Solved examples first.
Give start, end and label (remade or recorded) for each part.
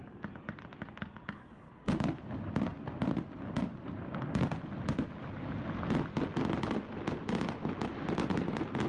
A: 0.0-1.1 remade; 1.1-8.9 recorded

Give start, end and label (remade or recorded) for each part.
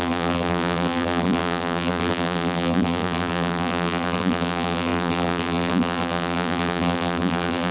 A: 0.0-7.7 remade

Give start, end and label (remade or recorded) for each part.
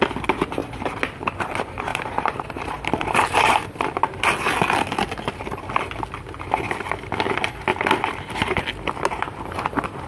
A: 0.0-1.9 recorded; 1.9-4.0 remade; 4.0-10.1 recorded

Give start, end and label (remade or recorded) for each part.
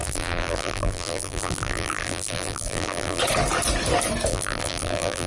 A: 0.0-3.2 remade; 3.2-4.3 recorded; 4.3-5.3 remade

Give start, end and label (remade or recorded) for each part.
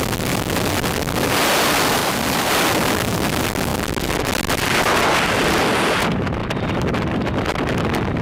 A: 0.0-2.0 recorded; 2.0-2.5 remade; 2.5-6.4 recorded; 6.4-7.1 remade; 7.1-8.2 recorded